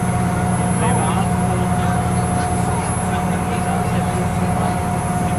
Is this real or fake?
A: real